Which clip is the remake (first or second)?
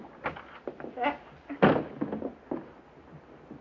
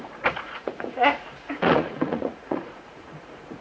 second